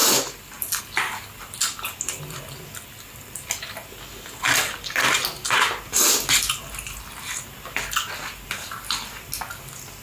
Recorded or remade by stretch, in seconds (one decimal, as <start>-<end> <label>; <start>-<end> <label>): 0.0-0.8 remade; 0.8-10.0 recorded